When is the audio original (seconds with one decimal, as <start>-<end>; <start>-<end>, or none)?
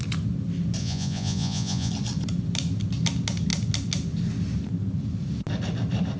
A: 0.0-0.8; 1.9-6.2